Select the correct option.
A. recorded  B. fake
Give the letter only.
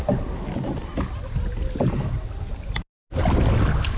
A